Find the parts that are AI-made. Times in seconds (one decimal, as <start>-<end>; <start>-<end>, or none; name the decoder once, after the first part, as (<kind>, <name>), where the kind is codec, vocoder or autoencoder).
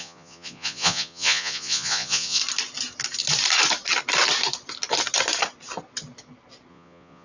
0.0-2.4 (vocoder, Vocos); 6.7-7.2